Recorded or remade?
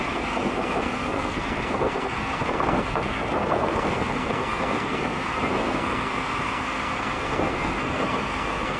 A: remade